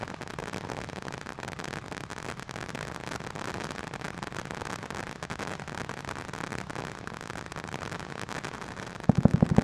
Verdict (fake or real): real